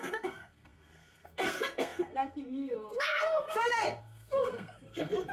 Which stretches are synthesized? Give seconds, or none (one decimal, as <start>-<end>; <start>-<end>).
0.0-5.3